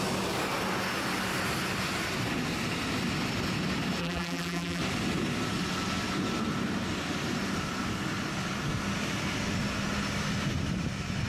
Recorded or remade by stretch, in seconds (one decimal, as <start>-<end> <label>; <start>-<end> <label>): 0.0-4.0 recorded; 4.0-4.8 remade; 4.8-11.3 recorded